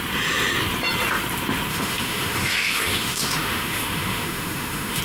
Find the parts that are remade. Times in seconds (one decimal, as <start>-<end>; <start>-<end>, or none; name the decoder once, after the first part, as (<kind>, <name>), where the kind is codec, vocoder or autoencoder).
1.7-5.0 (autoencoder, DAC-VAE)